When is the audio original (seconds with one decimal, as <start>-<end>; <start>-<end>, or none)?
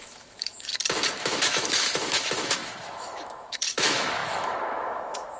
0.7-1.2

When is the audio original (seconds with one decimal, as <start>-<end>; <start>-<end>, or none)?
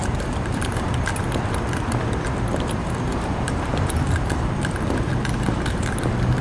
0.9-2.8; 4.5-6.4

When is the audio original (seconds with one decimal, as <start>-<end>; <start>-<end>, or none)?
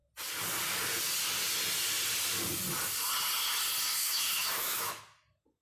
0.0-4.0; 5.0-5.6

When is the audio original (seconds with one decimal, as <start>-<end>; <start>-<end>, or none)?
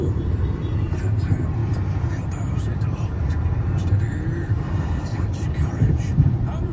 none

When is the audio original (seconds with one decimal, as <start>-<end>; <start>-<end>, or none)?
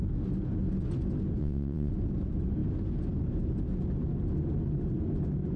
0.0-1.4; 1.9-5.6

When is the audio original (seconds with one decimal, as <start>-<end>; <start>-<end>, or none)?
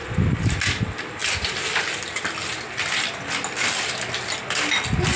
0.0-5.2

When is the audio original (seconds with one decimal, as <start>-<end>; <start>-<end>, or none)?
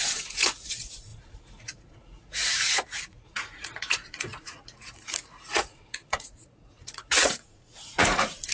none